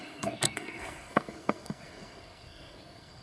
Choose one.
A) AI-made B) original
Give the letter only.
A